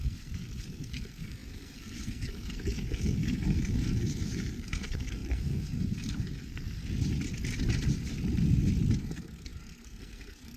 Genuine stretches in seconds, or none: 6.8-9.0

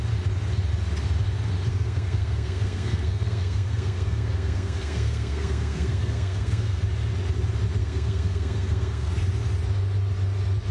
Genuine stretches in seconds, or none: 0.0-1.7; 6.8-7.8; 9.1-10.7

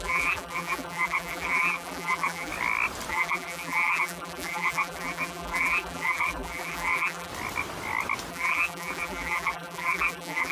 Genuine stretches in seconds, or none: 2.5-3.1; 7.3-8.3

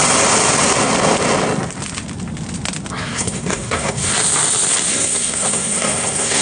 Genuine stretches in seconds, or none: 0.0-2.9; 4.1-4.9

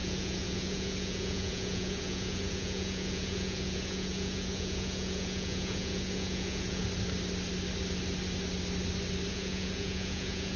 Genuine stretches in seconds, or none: 6.8-9.3

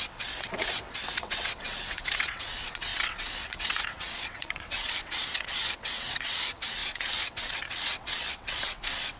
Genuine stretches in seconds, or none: none

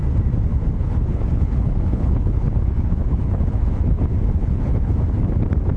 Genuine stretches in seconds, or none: 0.0-0.5; 4.0-4.4; 4.9-5.8